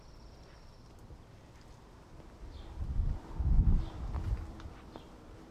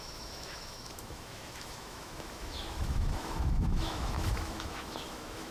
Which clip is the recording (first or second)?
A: first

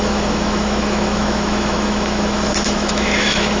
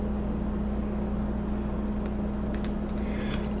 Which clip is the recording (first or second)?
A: second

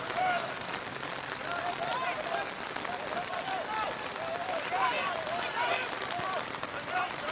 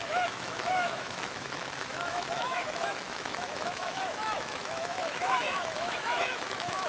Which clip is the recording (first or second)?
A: first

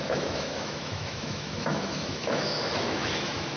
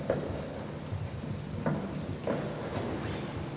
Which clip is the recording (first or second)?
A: second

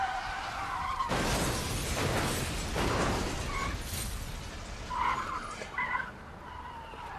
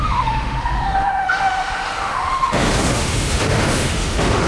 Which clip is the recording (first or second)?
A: first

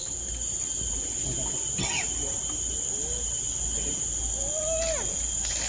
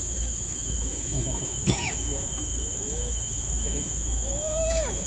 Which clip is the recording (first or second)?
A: first